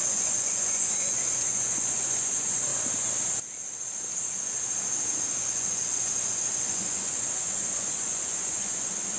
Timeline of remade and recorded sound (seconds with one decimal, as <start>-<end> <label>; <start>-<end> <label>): 0.0-2.7 remade; 2.7-5.4 recorded; 5.4-9.2 remade